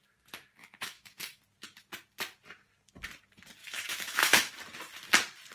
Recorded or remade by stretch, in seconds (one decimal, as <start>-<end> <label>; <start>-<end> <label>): 0.0-0.6 recorded; 0.6-1.4 remade; 1.4-3.6 recorded; 3.6-4.5 remade; 4.5-5.5 recorded